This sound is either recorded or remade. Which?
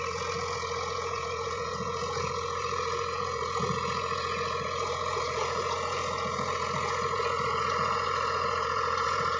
remade